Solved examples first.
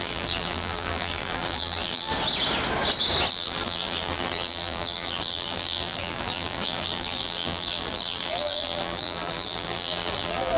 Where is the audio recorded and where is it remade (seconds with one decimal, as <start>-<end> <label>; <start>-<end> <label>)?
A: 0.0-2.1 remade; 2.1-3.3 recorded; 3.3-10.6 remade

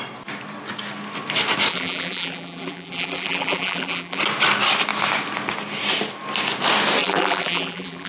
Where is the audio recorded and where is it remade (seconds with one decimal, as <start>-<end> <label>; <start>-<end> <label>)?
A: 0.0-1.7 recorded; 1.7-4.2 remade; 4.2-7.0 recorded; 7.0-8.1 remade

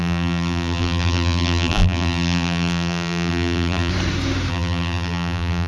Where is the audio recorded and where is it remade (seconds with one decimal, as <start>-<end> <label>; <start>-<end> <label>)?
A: 0.0-3.9 remade; 3.9-4.5 recorded; 4.5-5.7 remade

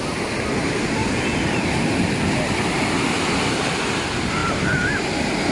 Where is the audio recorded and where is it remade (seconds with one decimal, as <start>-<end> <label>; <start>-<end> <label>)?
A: 0.0-4.4 recorded; 4.4-5.0 remade; 5.0-5.5 recorded

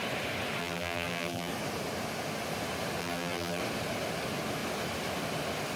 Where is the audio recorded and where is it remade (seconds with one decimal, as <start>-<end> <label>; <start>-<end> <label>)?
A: 0.0-0.6 recorded; 0.6-1.5 remade; 1.5-3.0 recorded; 3.0-3.6 remade; 3.6-5.8 recorded

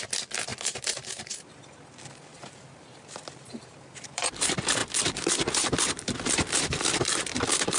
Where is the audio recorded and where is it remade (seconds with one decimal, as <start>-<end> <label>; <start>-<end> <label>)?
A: 0.0-0.5 recorded; 0.5-1.6 remade; 1.6-2.3 recorded; 2.3-4.3 remade; 4.3-7.8 recorded

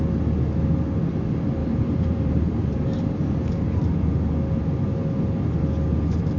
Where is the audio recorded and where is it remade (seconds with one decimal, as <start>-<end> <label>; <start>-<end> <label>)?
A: 0.0-1.6 recorded; 1.6-4.1 remade; 4.1-6.4 recorded

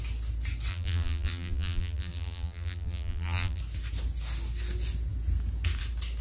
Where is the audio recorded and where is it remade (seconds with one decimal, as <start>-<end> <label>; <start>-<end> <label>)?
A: 0.0-0.7 recorded; 0.7-3.6 remade; 3.6-6.2 recorded